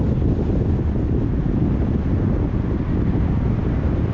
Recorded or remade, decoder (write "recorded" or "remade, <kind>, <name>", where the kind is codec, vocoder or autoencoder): recorded